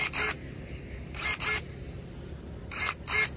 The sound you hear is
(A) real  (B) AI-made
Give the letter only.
A